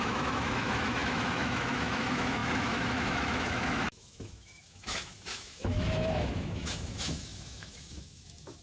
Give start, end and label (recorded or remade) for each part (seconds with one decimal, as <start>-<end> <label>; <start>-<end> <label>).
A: 0.0-8.6 remade